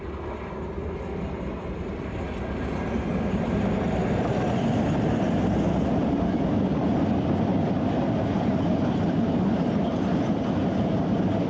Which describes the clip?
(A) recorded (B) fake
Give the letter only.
A